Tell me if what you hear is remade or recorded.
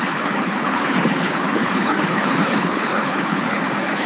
remade